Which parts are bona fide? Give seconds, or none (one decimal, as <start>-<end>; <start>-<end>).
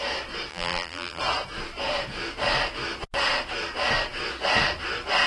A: 0.0-0.5; 1.2-5.3